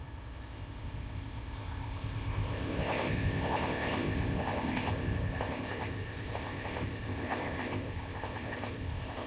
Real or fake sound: fake